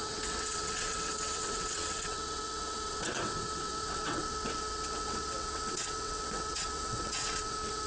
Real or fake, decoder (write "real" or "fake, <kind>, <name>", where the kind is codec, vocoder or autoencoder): fake, vocoder, WaveNeXt